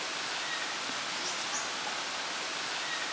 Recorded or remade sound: recorded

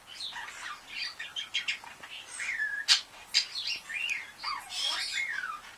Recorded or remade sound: recorded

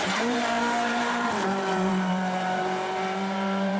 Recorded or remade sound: remade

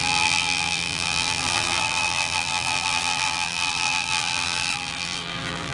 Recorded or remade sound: remade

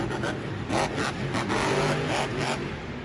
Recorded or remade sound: recorded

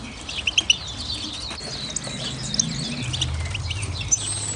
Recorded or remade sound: recorded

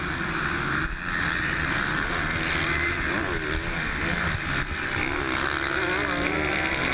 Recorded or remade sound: recorded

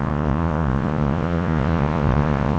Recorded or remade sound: remade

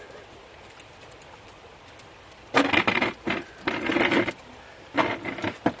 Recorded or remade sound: recorded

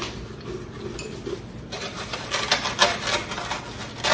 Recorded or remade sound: recorded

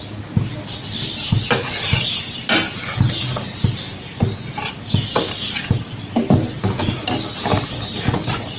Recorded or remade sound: recorded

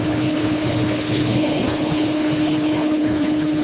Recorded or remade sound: remade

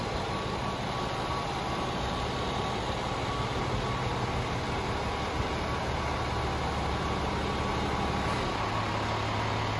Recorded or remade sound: recorded